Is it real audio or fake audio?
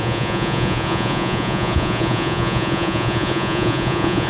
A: fake